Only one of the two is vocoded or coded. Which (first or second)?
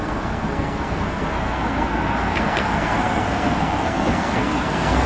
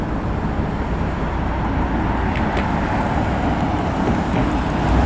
first